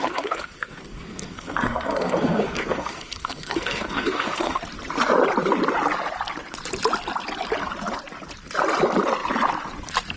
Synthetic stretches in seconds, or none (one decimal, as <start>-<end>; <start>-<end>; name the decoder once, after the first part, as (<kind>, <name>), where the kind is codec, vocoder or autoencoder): 0.0-4.6 (codec, SNAC)